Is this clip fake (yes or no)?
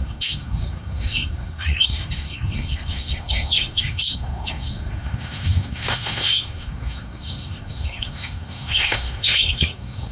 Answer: yes